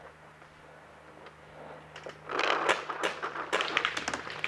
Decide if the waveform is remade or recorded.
recorded